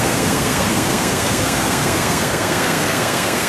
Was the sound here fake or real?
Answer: fake